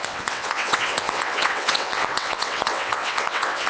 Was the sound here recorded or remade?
remade